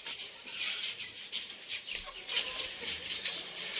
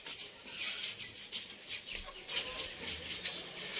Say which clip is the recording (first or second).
second